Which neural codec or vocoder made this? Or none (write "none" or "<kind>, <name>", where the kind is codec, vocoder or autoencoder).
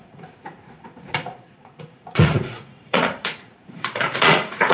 vocoder, Vocos